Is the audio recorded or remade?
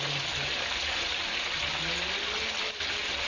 recorded